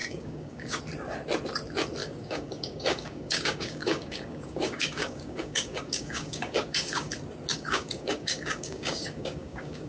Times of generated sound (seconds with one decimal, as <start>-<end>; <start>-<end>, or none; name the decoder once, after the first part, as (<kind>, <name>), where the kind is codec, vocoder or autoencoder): 0.0-0.8 (codec, DAC); 2.0-7.1; 7.5-9.9